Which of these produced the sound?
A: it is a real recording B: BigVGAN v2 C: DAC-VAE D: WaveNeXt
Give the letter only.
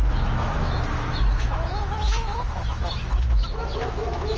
C